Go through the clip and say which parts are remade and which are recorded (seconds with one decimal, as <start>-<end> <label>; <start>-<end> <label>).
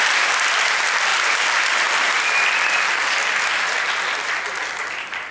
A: 0.0-5.3 remade